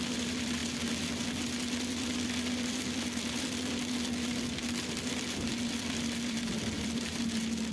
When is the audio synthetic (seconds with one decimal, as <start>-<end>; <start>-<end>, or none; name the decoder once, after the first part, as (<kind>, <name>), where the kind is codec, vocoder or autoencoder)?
0.0-0.6 (vocoder, BigVGAN v2); 1.2-7.7